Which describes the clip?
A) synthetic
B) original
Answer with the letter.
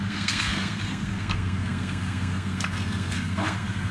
A